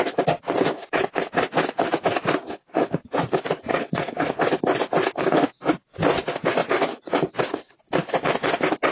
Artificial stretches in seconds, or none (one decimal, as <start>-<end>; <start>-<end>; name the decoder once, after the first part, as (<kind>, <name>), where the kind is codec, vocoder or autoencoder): 3.7-4.3 (codec, SNAC)